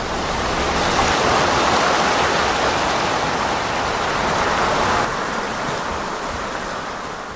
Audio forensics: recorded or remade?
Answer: recorded